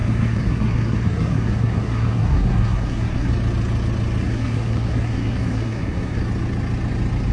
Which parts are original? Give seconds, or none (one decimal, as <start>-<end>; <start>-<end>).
3.3-4.2; 6.2-7.3